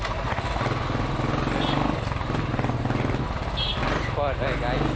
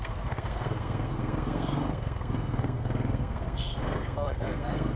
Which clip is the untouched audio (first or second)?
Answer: first